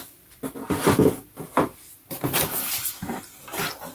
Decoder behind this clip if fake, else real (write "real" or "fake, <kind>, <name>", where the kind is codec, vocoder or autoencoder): real